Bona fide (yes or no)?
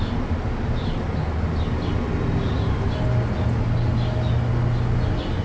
yes